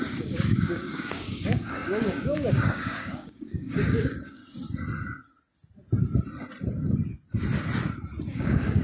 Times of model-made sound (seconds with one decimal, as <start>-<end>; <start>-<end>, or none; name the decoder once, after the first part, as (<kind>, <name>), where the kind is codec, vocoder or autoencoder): 0.0-4.4 (codec, DAC); 8.3-8.8